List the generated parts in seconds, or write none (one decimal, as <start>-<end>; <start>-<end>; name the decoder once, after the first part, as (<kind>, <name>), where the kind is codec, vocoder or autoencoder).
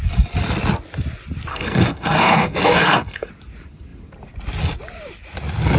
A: 1.5-3.3 (codec, SNAC)